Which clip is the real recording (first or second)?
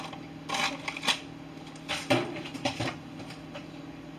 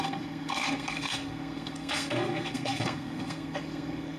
first